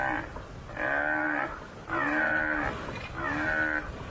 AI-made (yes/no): no